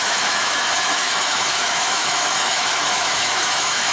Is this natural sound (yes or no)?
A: no